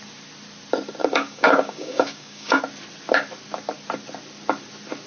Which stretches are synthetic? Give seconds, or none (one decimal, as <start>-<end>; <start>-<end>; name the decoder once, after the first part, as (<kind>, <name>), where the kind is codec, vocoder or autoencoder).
1.0-2.6 (codec, DAC)